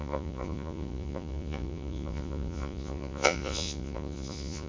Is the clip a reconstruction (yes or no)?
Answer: yes